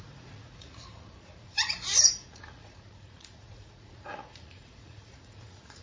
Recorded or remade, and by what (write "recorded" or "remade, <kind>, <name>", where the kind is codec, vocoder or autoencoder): remade, vocoder, Vocos